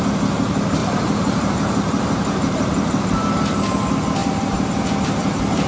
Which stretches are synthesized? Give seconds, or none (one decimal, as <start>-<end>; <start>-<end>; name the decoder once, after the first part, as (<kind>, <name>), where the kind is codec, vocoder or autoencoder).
0.8-3.2 (vocoder, BigVGAN v2); 4.2-4.8